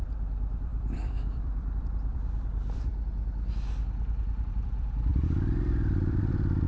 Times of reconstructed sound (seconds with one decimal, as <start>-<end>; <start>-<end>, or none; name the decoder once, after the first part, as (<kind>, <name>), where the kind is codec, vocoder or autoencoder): 0.0-2.9 (vocoder, BigVGAN v2); 4.5-6.7